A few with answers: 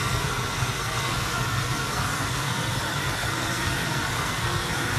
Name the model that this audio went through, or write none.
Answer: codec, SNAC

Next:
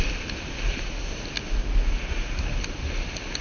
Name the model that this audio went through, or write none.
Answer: none